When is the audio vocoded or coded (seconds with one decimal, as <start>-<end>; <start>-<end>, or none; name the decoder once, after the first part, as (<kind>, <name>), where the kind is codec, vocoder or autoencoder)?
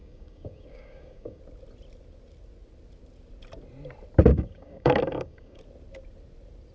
0.0-1.4 (codec, DAC); 4.3-5.6